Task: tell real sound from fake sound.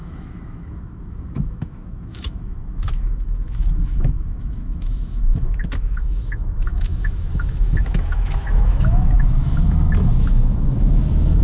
fake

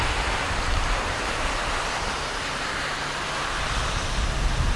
fake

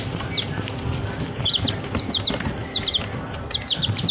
real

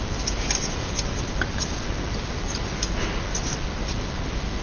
real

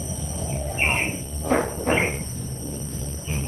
fake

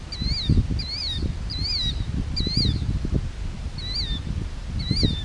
real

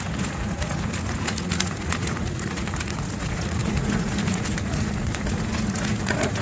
fake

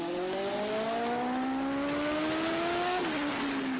real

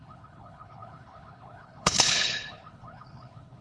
fake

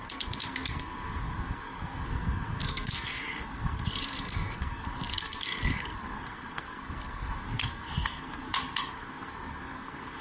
fake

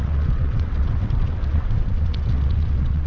fake